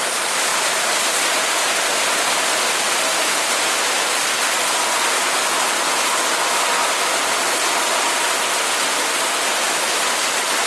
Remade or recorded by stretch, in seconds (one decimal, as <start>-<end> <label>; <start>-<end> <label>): 0.0-10.7 recorded